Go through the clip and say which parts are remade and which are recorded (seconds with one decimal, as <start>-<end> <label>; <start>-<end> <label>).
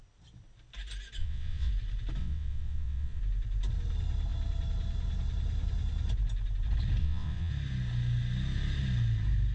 0.0-1.2 recorded; 1.2-1.7 remade; 1.7-2.2 recorded; 2.2-3.2 remade; 3.2-7.0 recorded; 7.0-7.5 remade; 7.5-9.5 recorded